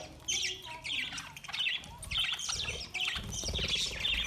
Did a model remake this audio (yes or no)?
no